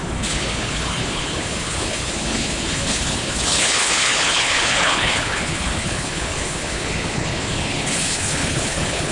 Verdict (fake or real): fake